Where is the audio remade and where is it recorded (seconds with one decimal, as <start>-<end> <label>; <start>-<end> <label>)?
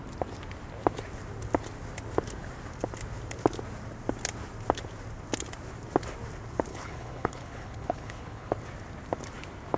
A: 0.0-6.7 recorded; 6.7-8.6 remade; 8.6-9.8 recorded